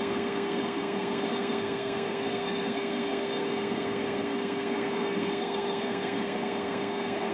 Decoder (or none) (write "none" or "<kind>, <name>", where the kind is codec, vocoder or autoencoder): codec, SNAC